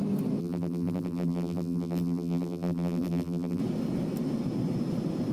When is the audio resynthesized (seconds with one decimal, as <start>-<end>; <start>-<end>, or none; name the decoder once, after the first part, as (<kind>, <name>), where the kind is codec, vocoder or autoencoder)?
0.4-3.6 (vocoder, BigVGAN v2)

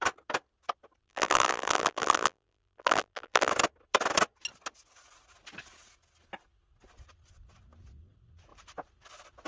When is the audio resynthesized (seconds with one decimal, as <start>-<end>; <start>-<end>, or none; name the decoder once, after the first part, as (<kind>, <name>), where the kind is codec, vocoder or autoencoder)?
1.0-3.5 (vocoder, BigVGAN v2)

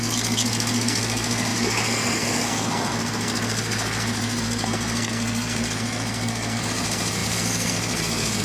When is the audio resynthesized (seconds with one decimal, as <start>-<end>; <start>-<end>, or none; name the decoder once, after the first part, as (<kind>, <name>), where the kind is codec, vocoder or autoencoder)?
0.0-8.4 (codec, SNAC)

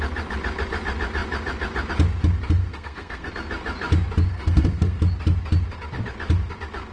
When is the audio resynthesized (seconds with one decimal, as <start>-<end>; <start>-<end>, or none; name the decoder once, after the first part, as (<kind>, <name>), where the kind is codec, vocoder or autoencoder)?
2.6-3.3 (codec, SNAC); 4.3-5.0

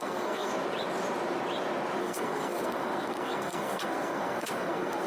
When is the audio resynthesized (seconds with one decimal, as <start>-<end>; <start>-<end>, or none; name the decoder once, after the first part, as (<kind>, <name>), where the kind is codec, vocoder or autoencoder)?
0.0-0.5 (codec, SNAC); 2.0-5.1

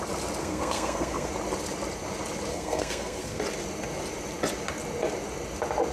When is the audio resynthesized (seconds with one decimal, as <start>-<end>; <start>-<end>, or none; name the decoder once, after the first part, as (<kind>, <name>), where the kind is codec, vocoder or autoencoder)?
0.4-1.3 (codec, SNAC); 2.5-3.4

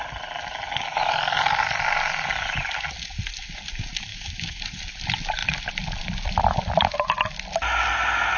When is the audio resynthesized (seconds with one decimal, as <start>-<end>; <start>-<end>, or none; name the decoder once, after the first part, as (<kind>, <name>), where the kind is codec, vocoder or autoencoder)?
4.1-4.6 (autoencoder, DAC-VAE)

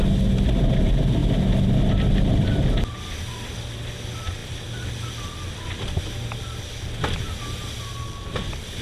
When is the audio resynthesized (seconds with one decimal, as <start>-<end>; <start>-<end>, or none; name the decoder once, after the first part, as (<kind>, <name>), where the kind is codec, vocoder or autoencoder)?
none